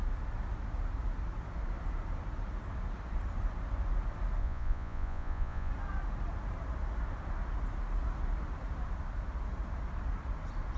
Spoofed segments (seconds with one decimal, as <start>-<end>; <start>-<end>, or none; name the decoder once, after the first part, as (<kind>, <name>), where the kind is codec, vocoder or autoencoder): 4.4-5.7 (vocoder, Vocos)